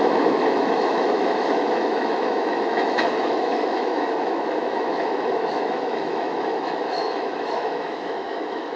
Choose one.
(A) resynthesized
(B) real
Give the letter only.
A